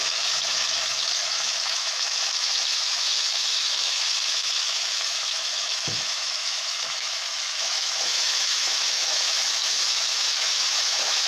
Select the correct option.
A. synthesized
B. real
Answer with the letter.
A